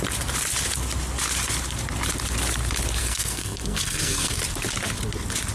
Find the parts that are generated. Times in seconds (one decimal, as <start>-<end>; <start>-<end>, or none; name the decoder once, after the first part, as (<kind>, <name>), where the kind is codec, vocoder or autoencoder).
3.0-4.4 (codec, SNAC)